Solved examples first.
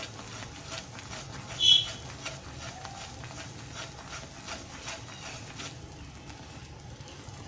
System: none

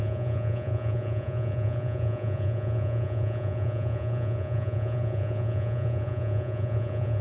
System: vocoder, Vocos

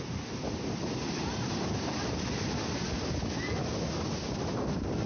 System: none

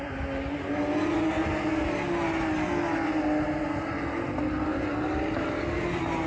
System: none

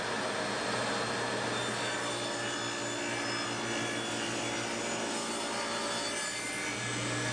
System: none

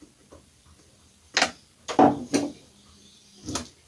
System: none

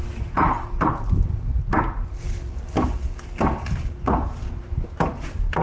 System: none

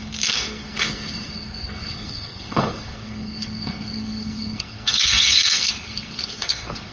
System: codec, SNAC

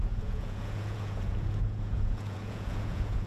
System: vocoder, Vocos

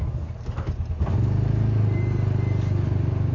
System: none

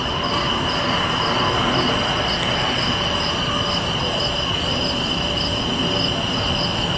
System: none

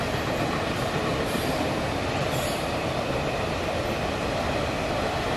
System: none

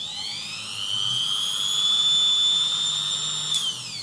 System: none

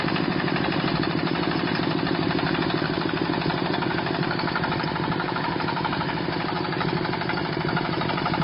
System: vocoder, BigVGAN v2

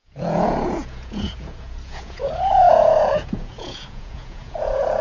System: vocoder, Vocos